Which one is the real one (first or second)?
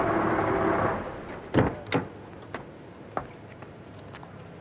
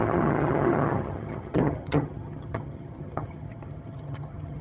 first